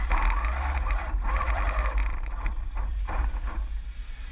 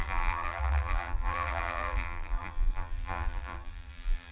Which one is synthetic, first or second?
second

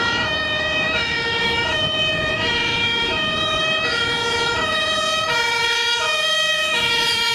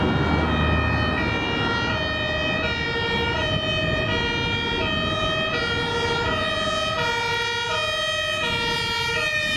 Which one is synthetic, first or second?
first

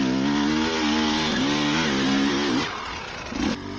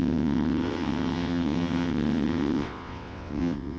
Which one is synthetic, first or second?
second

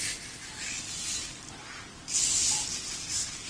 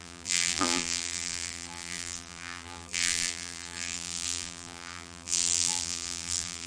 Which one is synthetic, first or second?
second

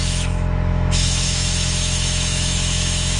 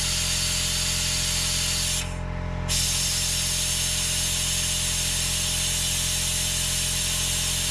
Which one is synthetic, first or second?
first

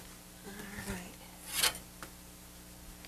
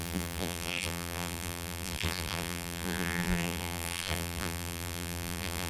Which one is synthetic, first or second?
second